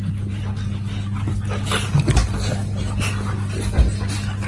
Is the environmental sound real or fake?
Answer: real